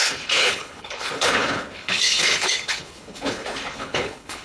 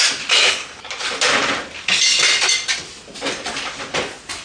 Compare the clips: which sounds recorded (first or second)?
second